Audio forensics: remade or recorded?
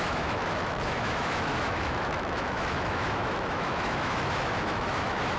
remade